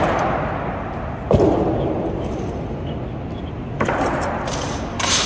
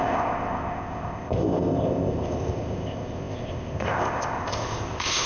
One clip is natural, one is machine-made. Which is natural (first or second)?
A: first